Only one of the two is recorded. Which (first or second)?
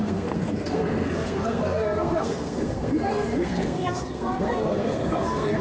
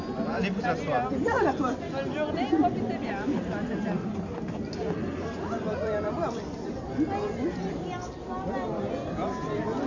second